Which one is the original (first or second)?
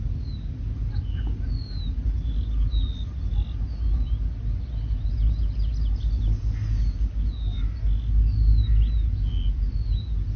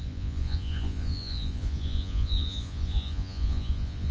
first